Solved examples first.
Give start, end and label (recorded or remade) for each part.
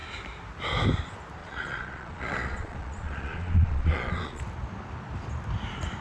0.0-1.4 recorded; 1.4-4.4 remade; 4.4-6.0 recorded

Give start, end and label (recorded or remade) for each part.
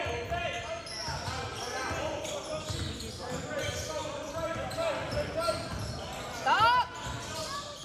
0.0-7.8 recorded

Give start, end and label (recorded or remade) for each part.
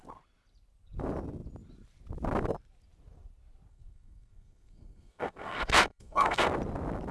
0.0-3.7 recorded; 3.7-6.5 remade; 6.5-7.1 recorded